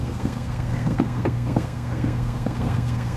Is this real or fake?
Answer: fake